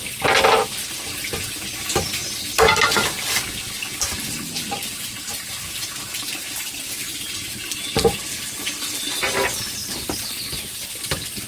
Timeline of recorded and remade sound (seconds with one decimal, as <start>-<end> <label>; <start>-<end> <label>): 0.0-9.8 recorded; 9.8-10.7 remade; 10.7-11.5 recorded